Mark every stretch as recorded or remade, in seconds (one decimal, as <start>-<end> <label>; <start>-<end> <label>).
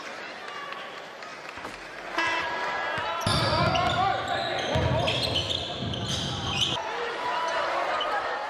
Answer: 0.0-8.5 recorded